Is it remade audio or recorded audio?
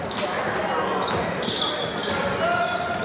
recorded